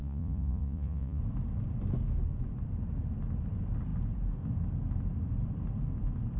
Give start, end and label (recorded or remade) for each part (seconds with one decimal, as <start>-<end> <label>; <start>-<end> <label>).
0.0-1.2 remade; 1.2-6.4 recorded